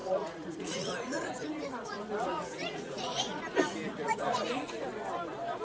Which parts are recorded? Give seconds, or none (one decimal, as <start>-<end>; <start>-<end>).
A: 3.4-3.9; 4.5-5.6

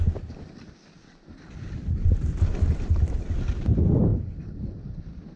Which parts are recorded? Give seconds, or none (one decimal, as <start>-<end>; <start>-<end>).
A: 0.0-5.4

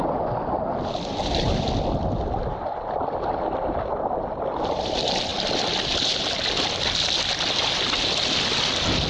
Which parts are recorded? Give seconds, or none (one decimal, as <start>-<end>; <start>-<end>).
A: 0.0-9.1

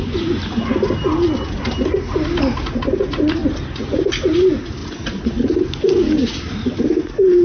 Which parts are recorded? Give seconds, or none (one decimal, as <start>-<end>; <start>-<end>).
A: 0.0-7.4

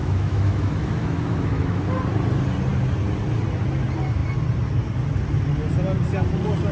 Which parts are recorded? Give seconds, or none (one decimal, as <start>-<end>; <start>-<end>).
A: 1.8-6.7

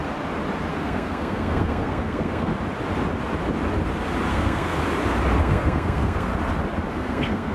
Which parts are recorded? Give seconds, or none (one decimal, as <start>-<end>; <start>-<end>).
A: 0.0-0.7; 2.5-4.3; 4.8-5.4; 6.3-6.9

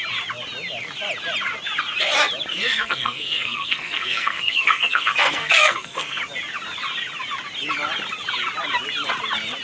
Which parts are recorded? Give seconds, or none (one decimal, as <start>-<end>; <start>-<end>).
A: 0.0-2.5; 6.2-9.6